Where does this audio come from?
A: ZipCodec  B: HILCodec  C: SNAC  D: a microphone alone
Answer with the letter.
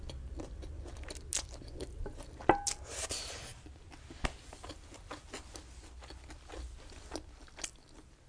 D